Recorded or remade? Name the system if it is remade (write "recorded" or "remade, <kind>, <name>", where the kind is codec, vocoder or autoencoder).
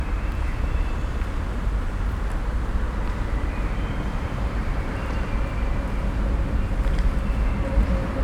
remade, vocoder, BigVGAN v2